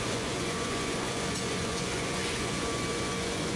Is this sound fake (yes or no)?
yes